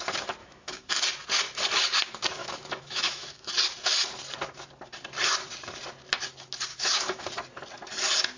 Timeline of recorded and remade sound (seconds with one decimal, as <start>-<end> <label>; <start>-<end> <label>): 0.0-0.4 recorded; 0.4-0.9 remade; 0.9-2.4 recorded; 2.4-3.5 remade; 3.5-6.7 recorded; 6.7-7.2 remade; 7.2-8.4 recorded